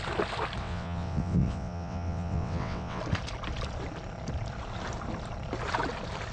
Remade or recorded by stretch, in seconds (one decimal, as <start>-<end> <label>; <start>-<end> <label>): 0.0-0.6 recorded; 0.6-3.0 remade; 3.0-6.3 recorded